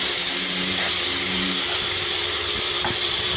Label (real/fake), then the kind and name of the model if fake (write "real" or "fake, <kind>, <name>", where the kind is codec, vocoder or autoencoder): fake, vocoder, BigVGAN v2